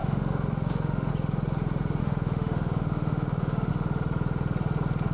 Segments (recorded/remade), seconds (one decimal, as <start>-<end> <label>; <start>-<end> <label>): 0.0-1.1 remade; 1.1-2.0 recorded; 2.0-3.7 remade; 3.7-5.1 recorded